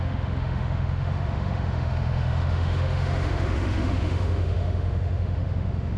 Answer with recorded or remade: remade